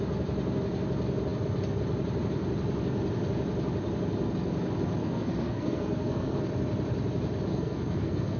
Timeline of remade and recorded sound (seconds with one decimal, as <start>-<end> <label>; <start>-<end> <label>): 0.0-5.0 recorded; 5.0-6.4 remade; 6.4-7.5 recorded; 7.5-8.4 remade